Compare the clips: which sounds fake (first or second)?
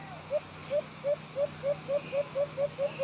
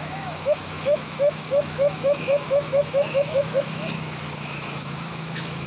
second